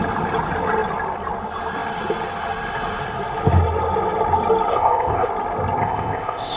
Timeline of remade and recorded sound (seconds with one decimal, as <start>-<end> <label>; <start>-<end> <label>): 0.0-4.7 recorded; 4.7-5.3 remade; 5.3-5.8 recorded; 5.8-6.6 remade